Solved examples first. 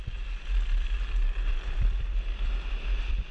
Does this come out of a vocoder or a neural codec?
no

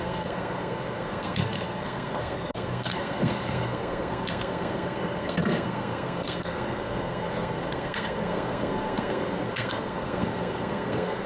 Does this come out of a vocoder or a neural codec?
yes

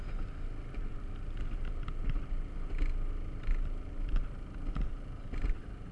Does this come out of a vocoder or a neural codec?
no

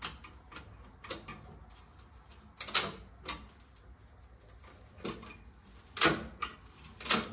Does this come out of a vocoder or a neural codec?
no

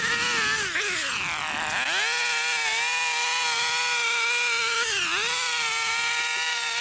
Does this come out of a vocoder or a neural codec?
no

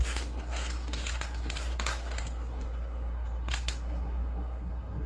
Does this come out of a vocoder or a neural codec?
yes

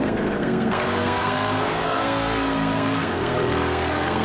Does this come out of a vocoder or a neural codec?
yes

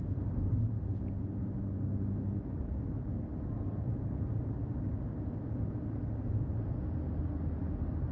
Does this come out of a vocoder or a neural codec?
no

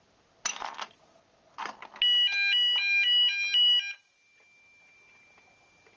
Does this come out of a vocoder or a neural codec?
no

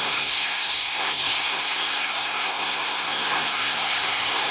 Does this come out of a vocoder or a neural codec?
yes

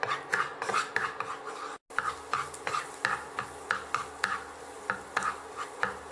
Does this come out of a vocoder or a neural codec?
no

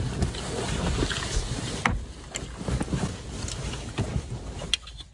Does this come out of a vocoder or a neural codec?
no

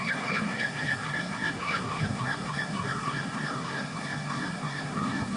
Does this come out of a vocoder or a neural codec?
yes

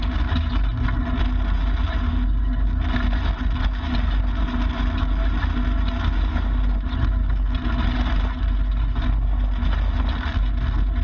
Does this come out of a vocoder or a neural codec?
no